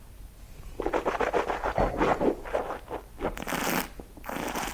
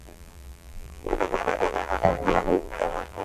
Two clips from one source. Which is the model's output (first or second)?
second